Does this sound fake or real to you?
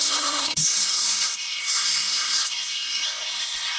fake